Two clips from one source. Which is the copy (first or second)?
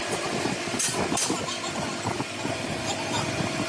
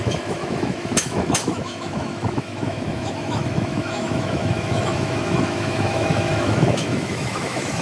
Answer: second